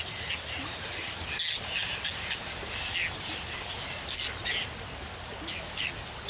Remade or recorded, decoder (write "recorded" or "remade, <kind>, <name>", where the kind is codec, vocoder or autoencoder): recorded